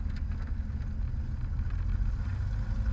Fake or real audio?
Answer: real